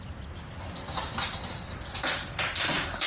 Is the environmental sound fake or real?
real